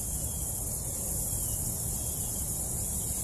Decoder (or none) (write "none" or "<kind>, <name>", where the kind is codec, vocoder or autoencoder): none